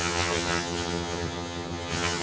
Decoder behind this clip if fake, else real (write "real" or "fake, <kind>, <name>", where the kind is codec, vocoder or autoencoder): fake, vocoder, HiFi-GAN